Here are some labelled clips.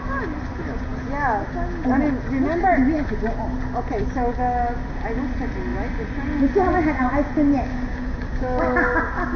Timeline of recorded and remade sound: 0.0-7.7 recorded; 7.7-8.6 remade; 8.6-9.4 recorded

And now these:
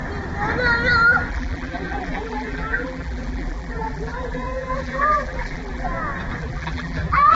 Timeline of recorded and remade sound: 0.0-1.3 recorded; 1.3-5.9 remade; 5.9-6.4 recorded; 6.4-7.3 remade

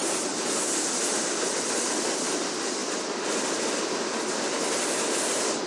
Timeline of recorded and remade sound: 0.0-5.7 recorded

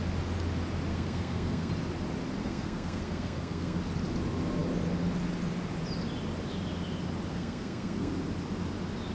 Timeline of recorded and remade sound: 0.0-0.9 recorded; 0.9-1.7 remade; 1.7-2.4 recorded; 2.4-3.8 remade; 3.8-7.3 recorded; 7.3-8.1 remade; 8.1-9.1 recorded

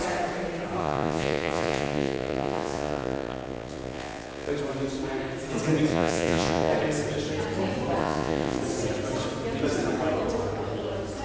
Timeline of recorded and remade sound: 0.0-0.8 recorded; 0.8-4.5 remade; 4.5-5.9 recorded; 5.9-6.7 remade; 6.7-8.0 recorded; 8.0-8.6 remade; 8.6-11.2 recorded

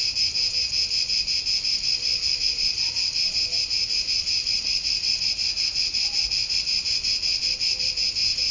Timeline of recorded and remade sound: 0.0-1.8 recorded; 1.8-3.2 remade; 3.2-4.4 recorded; 4.4-6.8 remade; 6.8-7.3 recorded; 7.3-7.9 remade; 7.9-8.5 recorded